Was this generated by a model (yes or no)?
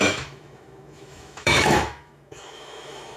yes